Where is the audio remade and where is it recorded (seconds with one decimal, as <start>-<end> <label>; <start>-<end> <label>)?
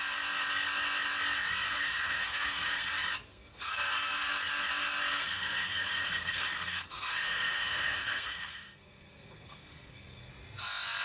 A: 0.0-1.7 recorded; 1.7-2.9 remade; 2.9-3.3 recorded; 3.3-4.3 remade; 4.3-5.1 recorded; 5.1-10.3 remade; 10.3-11.0 recorded